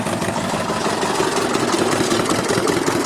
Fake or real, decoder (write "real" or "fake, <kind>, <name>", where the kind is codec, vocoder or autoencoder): real